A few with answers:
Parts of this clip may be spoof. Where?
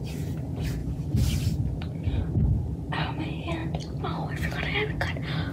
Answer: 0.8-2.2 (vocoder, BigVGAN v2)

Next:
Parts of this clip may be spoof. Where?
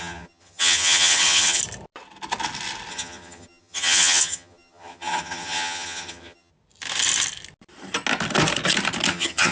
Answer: 0.0-1.6 (vocoder, HiFi-GAN); 2.9-6.5; 9.1-9.5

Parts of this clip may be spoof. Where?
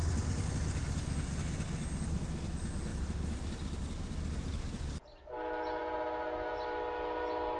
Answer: none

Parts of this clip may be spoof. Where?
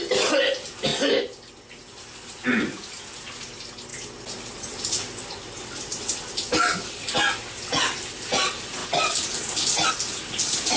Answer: none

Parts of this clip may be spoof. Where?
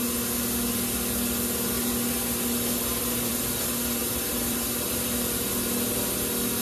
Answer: 4.0-4.7 (vocoder, BigVGAN v2)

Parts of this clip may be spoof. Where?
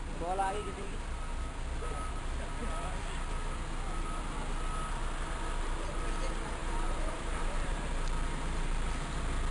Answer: 0.4-1.1 (vocoder, BigVGAN v2); 6.6-7.8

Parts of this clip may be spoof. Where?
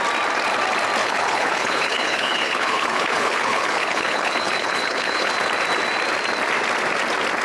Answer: 1.0-5.3 (codec, HILCodec)